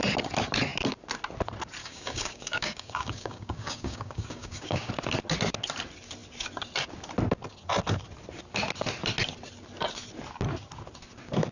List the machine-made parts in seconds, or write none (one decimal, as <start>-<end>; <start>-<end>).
1.8-4.9